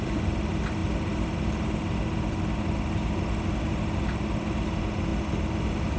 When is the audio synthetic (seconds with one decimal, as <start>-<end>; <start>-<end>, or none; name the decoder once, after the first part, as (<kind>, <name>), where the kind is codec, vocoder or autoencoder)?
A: none